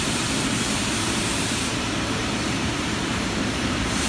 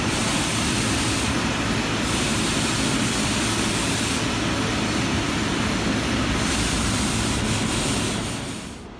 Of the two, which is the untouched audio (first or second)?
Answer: second